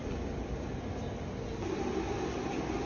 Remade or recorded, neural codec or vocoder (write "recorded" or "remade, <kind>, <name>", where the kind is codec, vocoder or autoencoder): recorded